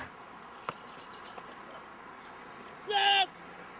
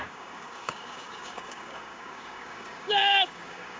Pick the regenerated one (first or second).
second